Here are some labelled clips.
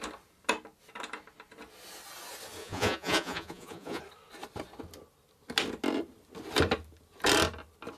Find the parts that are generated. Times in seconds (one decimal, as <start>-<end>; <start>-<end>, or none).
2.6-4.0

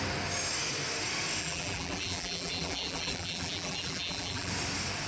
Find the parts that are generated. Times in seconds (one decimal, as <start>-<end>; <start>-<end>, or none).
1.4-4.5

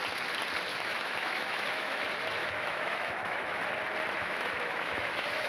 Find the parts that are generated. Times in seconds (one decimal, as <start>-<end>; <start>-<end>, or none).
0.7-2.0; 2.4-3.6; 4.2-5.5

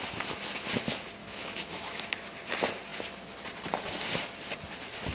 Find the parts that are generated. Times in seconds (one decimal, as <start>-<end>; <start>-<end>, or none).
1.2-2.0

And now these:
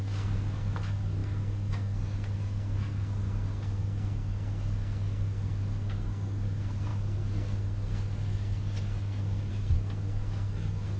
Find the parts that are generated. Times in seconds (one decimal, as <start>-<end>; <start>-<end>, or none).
0.0-11.0

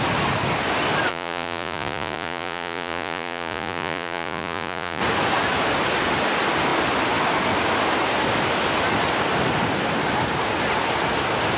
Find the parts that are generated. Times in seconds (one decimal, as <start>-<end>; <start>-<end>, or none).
1.1-5.0